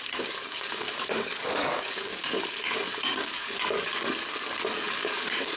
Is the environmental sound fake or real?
fake